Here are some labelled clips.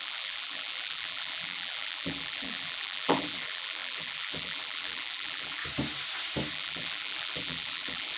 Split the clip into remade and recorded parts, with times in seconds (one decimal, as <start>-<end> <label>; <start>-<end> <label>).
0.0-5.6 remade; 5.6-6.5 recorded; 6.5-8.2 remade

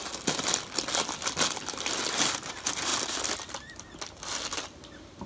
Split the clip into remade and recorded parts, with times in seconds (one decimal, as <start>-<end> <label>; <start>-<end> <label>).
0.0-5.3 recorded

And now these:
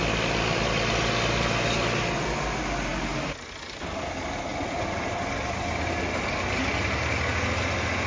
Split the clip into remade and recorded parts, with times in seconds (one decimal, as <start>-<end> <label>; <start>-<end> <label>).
0.0-8.1 recorded

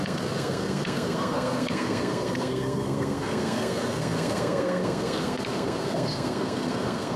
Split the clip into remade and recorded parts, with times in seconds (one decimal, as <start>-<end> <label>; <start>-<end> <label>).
0.0-7.2 remade

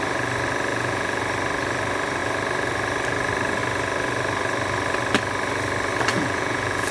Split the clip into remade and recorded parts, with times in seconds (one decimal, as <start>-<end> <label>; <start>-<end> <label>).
0.0-0.7 recorded; 0.7-1.2 remade; 1.2-6.1 recorded; 6.1-6.9 remade

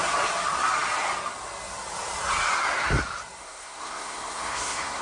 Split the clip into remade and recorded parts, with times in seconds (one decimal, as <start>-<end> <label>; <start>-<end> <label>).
0.0-3.4 recorded; 3.4-5.0 remade